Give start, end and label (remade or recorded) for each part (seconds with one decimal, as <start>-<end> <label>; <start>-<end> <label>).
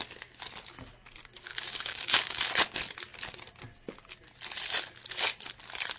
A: 0.0-1.5 recorded; 1.5-2.5 remade; 2.5-6.0 recorded